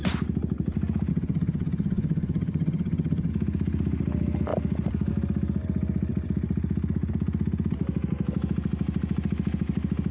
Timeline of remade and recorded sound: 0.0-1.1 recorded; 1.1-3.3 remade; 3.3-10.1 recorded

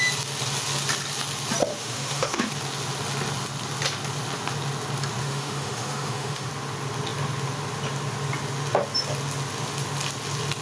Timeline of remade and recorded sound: 0.0-1.7 recorded; 1.7-2.5 remade; 2.5-5.2 recorded; 5.2-6.5 remade; 6.5-10.6 recorded

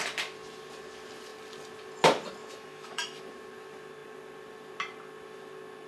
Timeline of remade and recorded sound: 0.0-2.4 recorded; 2.4-3.2 remade; 3.2-5.9 recorded

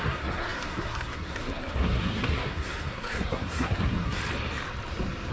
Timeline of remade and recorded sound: 0.0-4.2 remade; 4.2-5.3 recorded

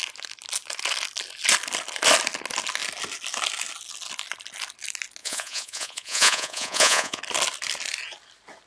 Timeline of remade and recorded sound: 0.0-5.2 recorded; 5.2-7.2 remade; 7.2-8.7 recorded

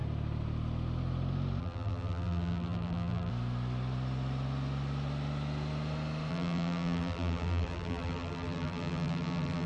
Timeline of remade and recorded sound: 0.0-1.6 recorded; 1.6-3.3 remade; 3.3-6.3 recorded; 6.3-9.7 remade

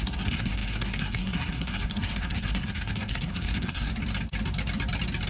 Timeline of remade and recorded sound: 0.0-3.9 remade; 3.9-5.3 recorded

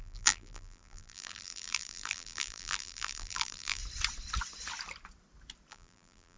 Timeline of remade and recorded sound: 0.0-3.8 remade; 3.8-5.7 recorded; 5.7-6.4 remade